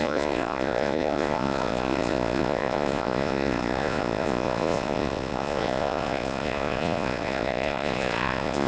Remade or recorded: remade